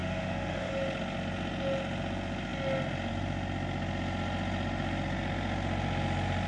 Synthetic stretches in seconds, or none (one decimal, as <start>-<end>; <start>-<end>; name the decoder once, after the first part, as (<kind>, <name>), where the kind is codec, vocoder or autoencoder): 0.0-0.7 (autoencoder, DAC-VAE)